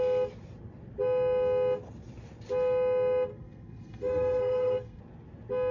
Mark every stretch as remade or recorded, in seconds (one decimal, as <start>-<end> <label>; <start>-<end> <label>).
0.0-3.3 recorded; 3.3-5.0 remade; 5.0-5.7 recorded